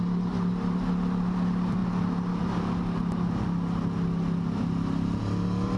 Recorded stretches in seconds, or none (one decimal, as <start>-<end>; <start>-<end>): 0.0-5.8